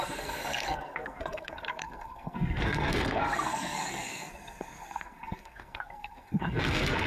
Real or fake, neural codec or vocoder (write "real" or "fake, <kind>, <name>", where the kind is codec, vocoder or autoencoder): fake, codec, SNAC